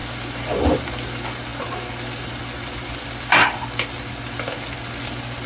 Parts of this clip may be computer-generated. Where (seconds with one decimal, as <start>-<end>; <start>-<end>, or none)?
none